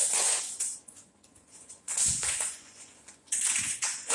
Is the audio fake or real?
fake